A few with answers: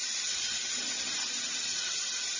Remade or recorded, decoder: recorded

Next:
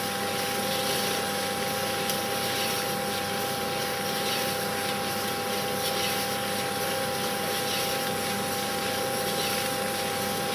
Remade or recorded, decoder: recorded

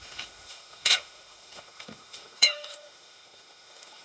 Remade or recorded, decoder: remade, autoencoder, DAC-VAE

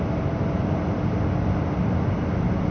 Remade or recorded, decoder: recorded